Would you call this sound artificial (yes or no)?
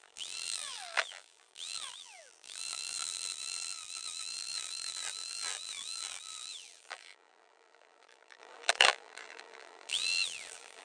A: yes